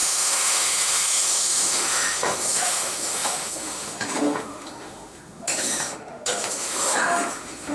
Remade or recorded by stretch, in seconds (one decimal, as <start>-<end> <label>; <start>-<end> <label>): 0.0-7.7 remade